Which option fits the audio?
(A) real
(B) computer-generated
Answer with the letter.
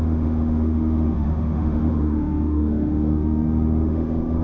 B